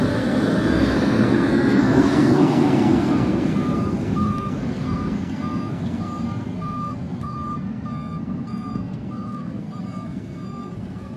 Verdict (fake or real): fake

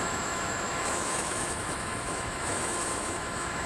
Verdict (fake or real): fake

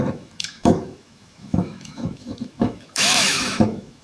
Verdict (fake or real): fake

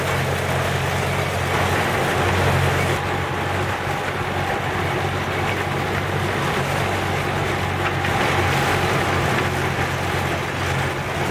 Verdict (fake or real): real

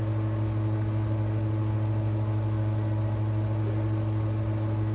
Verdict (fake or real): real